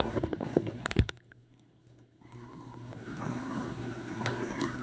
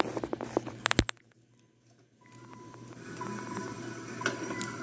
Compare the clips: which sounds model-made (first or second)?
first